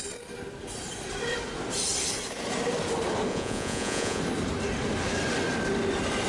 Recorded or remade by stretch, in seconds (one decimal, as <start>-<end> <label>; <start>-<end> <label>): 0.0-3.3 recorded; 3.3-4.2 remade; 4.2-6.3 recorded